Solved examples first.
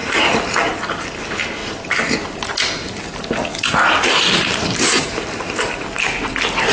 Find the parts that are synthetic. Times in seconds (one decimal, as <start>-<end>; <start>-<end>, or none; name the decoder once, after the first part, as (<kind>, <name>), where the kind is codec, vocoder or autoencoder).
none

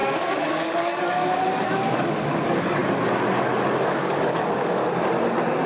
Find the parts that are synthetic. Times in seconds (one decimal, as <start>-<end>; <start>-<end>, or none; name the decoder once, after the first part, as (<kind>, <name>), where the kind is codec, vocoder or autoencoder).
0.0-2.8 (codec, DAC); 3.9-4.8

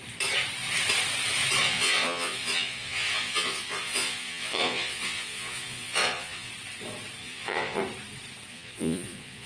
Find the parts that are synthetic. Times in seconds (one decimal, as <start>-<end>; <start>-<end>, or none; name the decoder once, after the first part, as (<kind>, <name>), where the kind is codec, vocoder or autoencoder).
1.6-6.5 (vocoder, Vocos); 7.2-7.8; 8.5-9.5